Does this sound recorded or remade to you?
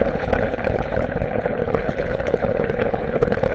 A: remade